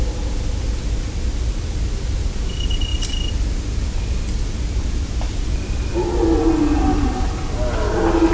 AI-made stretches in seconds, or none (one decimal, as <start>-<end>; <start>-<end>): none